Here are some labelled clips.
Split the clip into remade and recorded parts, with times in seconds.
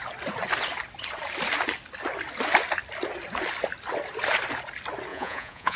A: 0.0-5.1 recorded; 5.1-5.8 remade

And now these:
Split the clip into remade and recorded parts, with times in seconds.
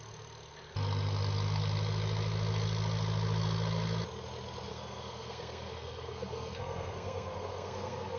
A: 0.0-4.7 recorded; 4.7-8.2 remade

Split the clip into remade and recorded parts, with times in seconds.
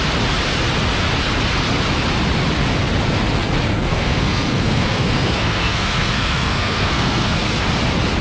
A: 0.0-3.7 recorded; 3.7-7.6 remade; 7.6-8.2 recorded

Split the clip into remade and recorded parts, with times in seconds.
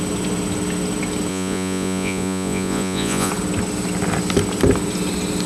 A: 0.0-1.3 recorded; 1.3-3.3 remade; 3.3-5.5 recorded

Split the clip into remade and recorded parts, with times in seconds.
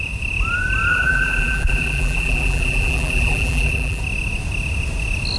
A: 0.0-0.9 recorded; 0.9-4.0 remade; 4.0-5.4 recorded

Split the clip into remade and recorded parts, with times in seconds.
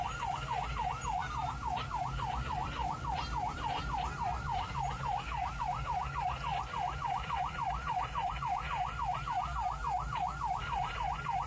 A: 0.0-1.2 recorded; 1.2-5.6 remade; 5.6-6.5 recorded; 6.5-8.3 remade; 8.3-11.5 recorded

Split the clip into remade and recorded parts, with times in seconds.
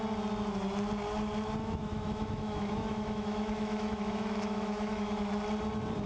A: 0.0-1.6 recorded; 1.6-5.3 remade; 5.3-6.1 recorded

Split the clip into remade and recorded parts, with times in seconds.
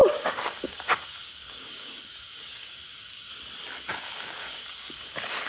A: 0.0-3.3 remade; 3.3-3.9 recorded; 3.9-5.5 remade